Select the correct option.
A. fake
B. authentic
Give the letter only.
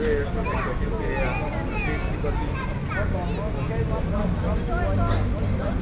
B